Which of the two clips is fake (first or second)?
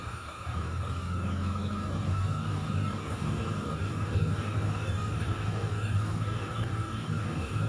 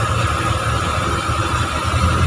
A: first